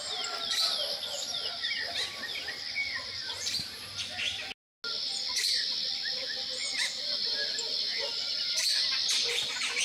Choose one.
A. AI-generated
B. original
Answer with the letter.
B